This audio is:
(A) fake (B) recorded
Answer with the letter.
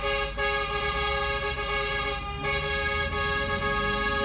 B